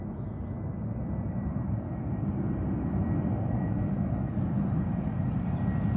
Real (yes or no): yes